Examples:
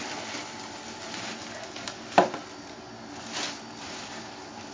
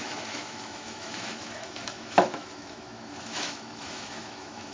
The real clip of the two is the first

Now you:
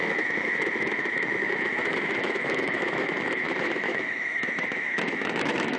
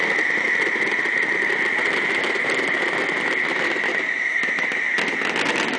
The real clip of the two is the second